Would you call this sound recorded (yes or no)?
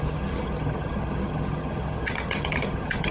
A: no